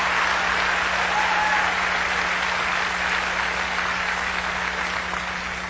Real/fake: real